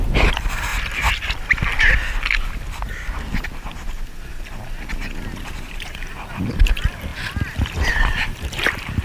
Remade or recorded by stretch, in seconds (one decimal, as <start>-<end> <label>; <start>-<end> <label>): 0.0-0.7 remade; 0.7-5.7 recorded; 5.7-7.1 remade; 7.1-7.9 recorded; 7.9-9.0 remade